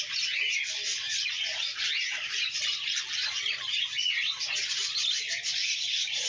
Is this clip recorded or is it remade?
recorded